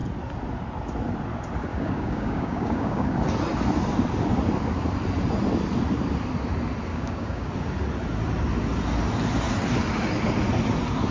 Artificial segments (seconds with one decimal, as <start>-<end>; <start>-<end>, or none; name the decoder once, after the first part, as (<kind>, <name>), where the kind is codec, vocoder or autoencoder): 1.7-3.1 (codec, DAC); 6.9-7.5